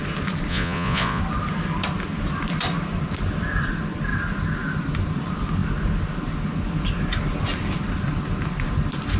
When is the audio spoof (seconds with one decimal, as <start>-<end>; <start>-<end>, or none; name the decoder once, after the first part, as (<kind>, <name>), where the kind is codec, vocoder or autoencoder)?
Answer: 0.5-1.2 (vocoder, Vocos)